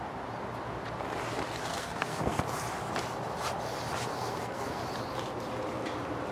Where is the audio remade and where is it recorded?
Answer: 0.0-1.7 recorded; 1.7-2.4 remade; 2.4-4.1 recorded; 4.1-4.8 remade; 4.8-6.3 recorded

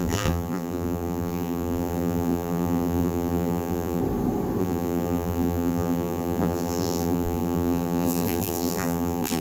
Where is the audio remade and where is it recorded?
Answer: 0.0-4.0 remade; 4.0-4.6 recorded; 4.6-9.4 remade

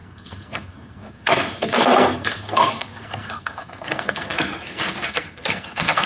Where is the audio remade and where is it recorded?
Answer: 0.0-6.1 remade

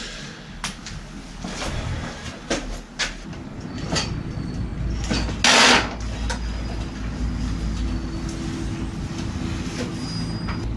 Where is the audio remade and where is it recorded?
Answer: 0.0-10.8 recorded

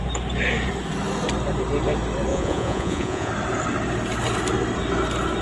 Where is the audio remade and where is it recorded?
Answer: 0.0-2.3 recorded; 2.3-3.3 remade; 3.3-5.4 recorded

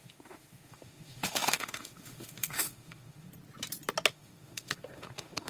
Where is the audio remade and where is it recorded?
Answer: 0.0-3.3 remade; 3.3-4.1 recorded; 4.1-5.5 remade